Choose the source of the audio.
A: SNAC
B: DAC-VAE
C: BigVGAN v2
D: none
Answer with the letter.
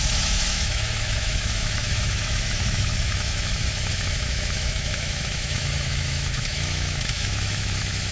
B